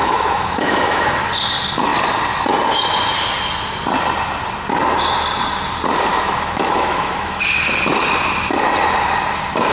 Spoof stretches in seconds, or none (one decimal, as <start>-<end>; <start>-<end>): 0.0-1.2; 6.1-7.4